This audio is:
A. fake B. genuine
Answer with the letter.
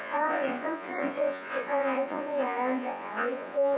A